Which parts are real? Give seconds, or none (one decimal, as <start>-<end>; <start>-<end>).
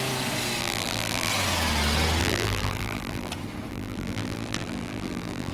0.0-0.6; 1.3-2.2; 3.3-3.7